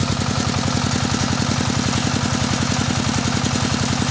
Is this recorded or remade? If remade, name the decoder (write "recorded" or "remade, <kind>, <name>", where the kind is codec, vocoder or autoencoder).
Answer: recorded